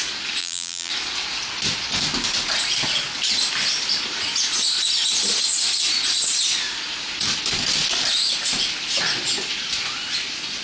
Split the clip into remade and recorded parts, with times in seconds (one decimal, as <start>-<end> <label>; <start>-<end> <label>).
0.0-0.4 recorded; 0.4-0.9 remade; 0.9-10.6 recorded